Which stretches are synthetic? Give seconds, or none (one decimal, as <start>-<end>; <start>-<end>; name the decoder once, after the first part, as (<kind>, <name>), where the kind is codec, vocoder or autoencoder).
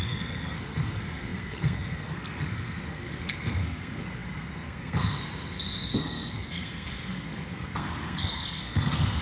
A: 0.0-9.2 (codec, SNAC)